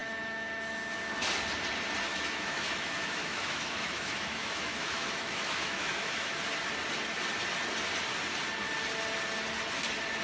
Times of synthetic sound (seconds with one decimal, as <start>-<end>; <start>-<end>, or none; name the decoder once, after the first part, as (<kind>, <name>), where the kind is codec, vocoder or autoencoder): 0.0-1.2 (autoencoder, DAC-VAE); 2.1-6.4